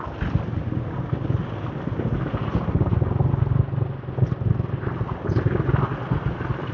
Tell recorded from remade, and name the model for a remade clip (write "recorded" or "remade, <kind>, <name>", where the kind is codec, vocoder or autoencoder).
recorded